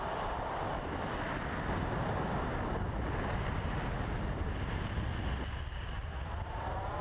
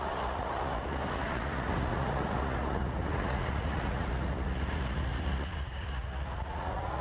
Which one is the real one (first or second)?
first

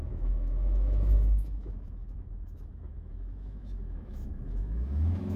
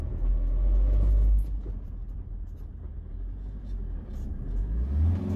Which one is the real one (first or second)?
second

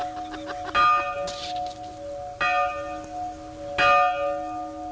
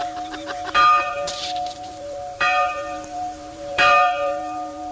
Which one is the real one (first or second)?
first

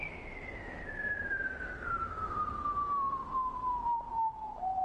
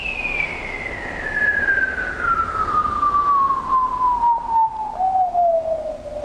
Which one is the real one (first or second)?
second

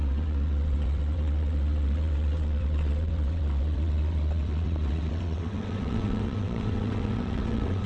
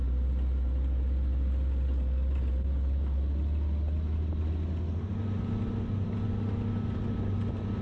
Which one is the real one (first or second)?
second